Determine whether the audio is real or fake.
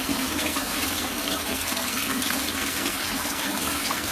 fake